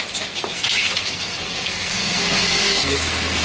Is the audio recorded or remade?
remade